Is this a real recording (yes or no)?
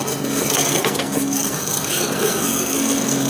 no